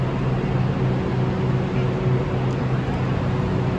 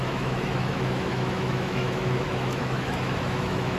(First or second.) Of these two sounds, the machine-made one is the second